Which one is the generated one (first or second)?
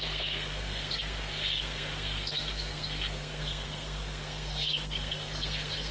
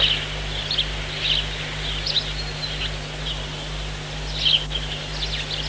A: first